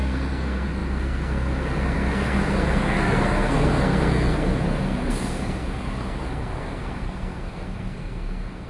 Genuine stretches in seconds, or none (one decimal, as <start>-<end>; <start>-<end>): none